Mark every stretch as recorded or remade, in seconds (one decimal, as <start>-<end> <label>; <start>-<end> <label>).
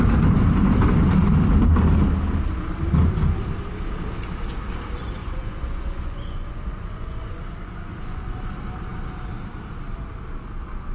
0.0-5.2 recorded; 5.2-8.4 remade; 8.4-10.9 recorded